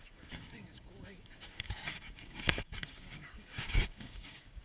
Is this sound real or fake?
fake